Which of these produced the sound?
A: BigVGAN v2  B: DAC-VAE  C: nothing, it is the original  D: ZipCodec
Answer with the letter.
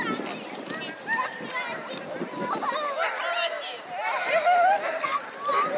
C